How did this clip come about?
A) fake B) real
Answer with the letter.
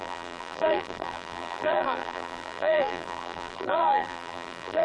A